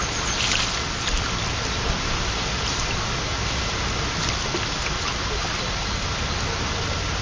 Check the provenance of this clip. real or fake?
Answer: real